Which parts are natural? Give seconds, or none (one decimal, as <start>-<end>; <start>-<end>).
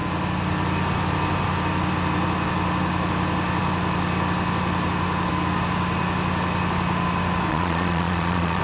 0.0-7.5